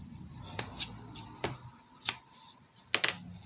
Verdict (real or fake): real